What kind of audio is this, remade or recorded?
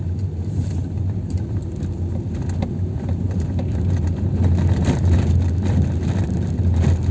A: recorded